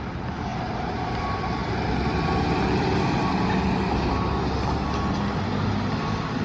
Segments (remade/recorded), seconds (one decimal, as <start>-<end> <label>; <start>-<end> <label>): 0.0-6.4 recorded

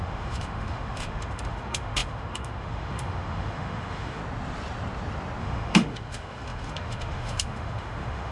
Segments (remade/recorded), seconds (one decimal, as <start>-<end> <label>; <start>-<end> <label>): 0.0-4.2 remade; 4.2-5.4 recorded; 5.4-8.3 remade